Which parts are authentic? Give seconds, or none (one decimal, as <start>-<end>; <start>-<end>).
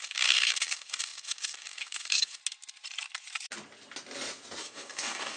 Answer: 2.4-4.6